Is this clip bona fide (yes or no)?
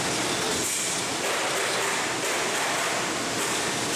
yes